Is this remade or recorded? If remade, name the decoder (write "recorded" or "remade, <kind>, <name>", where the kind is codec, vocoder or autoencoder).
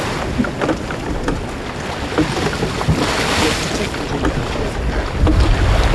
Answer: recorded